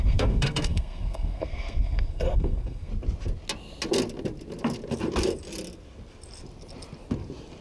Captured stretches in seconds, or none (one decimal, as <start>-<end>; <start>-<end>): 2.9-7.6